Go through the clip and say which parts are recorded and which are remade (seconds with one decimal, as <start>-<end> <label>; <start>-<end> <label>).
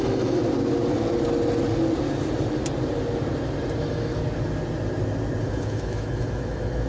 0.0-0.4 remade; 0.4-3.8 recorded; 3.8-4.2 remade; 4.2-5.4 recorded; 5.4-6.9 remade